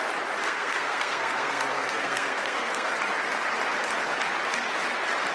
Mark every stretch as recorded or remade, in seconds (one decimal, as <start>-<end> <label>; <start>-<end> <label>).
0.0-0.4 recorded; 0.4-2.9 remade; 2.9-5.3 recorded